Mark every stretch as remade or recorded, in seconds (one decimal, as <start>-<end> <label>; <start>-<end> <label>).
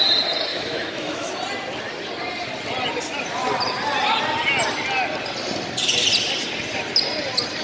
0.0-0.5 recorded; 0.5-1.3 remade; 1.3-7.6 recorded